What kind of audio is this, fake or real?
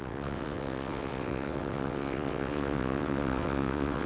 fake